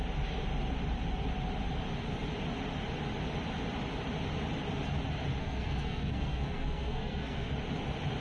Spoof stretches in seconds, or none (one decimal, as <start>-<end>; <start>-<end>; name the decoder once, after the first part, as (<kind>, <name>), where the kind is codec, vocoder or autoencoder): 5.4-7.5 (codec, SNAC)